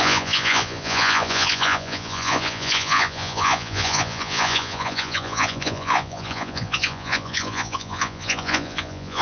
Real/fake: fake